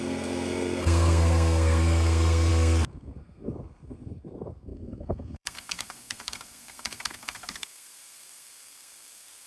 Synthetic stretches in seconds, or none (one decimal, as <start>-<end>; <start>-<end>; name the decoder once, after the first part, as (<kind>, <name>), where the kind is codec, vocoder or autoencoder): 0.0-9.5 (codec, SNAC)